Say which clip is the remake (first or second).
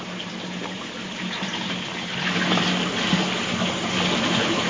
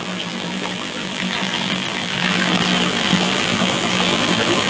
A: second